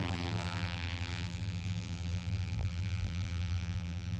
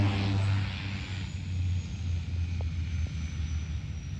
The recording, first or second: second